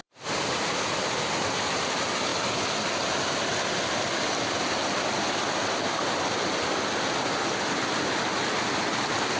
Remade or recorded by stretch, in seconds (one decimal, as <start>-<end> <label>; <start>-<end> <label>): 0.0-9.4 recorded